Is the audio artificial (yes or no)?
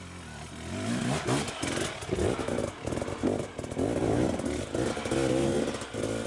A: no